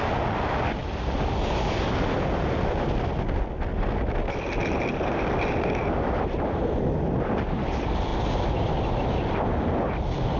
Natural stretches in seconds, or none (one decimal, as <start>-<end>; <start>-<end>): 0.0-10.4